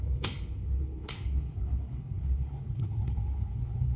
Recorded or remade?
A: remade